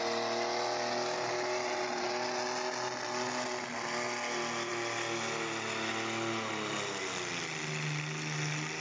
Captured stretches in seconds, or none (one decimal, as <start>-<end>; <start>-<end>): 0.0-8.8